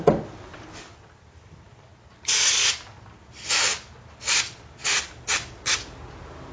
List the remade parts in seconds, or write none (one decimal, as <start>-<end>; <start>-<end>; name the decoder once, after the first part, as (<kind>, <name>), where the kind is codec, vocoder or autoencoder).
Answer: 0.0-1.9 (vocoder, BigVGAN v2); 4.1-4.8